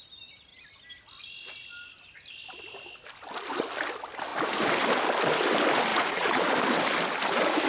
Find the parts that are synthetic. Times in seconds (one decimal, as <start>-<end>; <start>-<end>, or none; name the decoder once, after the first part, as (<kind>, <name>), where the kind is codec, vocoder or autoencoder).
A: 5.9-6.4 (vocoder, Vocos)